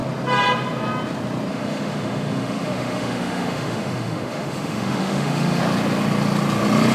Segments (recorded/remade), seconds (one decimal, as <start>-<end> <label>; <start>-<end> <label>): 0.0-1.5 recorded; 1.5-5.6 remade; 5.6-6.9 recorded